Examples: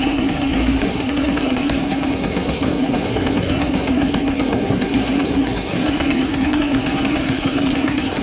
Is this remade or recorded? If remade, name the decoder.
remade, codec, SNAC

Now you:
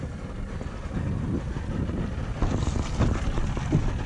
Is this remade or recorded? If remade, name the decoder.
recorded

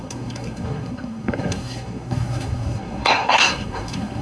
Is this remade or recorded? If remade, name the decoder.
remade, codec, SNAC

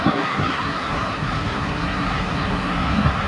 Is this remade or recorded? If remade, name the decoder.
remade, codec, SNAC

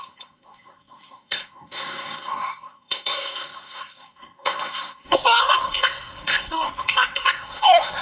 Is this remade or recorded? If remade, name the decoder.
remade, codec, SNAC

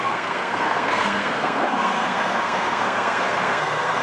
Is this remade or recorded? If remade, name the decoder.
remade, codec, SNAC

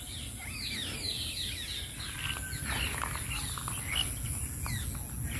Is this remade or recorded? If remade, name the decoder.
recorded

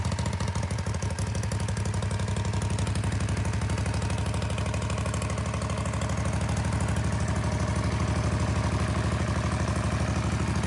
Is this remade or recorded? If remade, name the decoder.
recorded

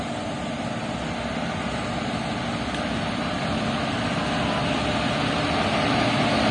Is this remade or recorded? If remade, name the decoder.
recorded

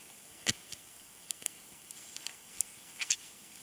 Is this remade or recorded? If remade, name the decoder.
remade, codec, SNAC